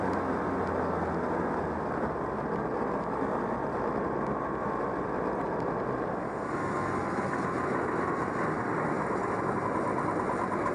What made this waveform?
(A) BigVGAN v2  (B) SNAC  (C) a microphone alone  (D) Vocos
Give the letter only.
C